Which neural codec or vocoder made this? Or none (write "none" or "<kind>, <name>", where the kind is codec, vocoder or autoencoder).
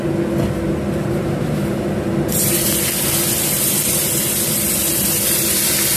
none